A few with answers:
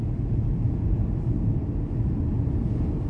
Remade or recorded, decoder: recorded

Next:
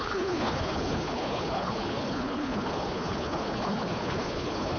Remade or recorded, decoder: remade, codec, HILCodec